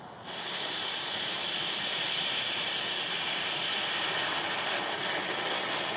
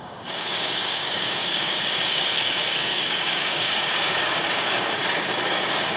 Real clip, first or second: first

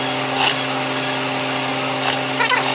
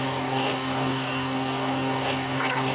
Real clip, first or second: first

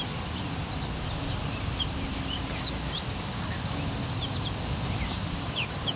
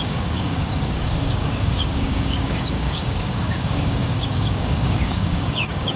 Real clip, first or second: first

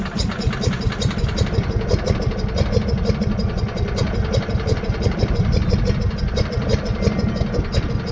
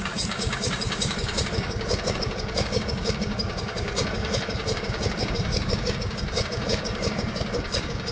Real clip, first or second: first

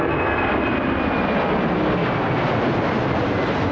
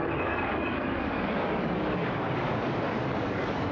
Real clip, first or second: first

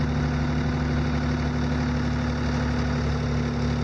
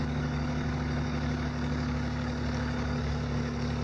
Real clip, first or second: first